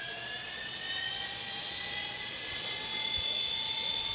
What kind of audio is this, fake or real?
fake